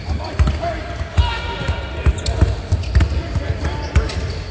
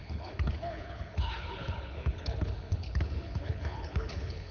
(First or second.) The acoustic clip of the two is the first